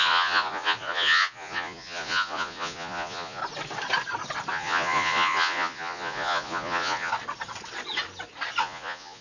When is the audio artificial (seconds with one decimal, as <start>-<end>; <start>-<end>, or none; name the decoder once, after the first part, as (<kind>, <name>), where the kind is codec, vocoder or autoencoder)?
0.0-3.4 (vocoder, Vocos); 4.5-7.1; 8.6-9.2